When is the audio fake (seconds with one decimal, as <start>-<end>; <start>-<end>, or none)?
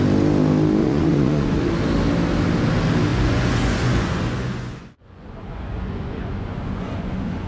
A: 0.8-1.7; 3.1-7.5